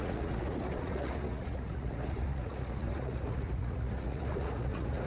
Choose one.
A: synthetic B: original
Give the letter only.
A